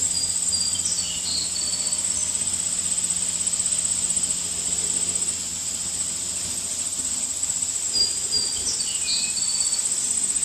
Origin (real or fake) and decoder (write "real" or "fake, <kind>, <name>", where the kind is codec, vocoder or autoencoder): real